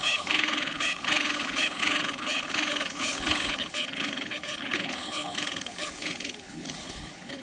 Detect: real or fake fake